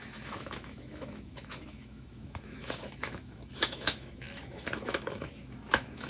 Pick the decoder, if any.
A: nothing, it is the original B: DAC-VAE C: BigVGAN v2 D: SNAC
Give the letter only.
B